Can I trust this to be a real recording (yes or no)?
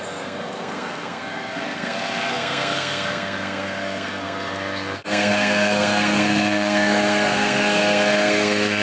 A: no